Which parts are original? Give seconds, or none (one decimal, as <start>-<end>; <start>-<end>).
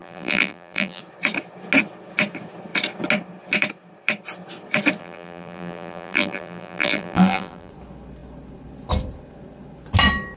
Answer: 1.0-5.0; 7.7-10.4